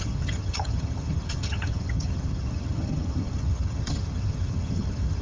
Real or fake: fake